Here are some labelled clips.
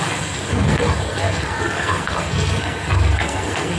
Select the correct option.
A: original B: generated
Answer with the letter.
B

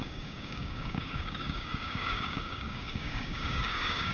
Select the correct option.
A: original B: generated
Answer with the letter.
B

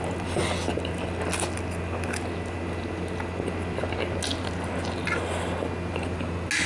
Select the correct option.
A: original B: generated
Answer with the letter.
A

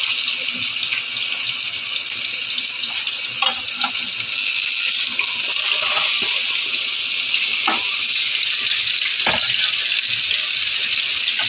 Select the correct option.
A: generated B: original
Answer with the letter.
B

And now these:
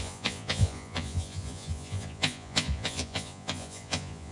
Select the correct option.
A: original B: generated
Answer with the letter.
B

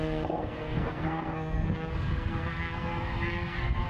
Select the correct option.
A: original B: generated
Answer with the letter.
B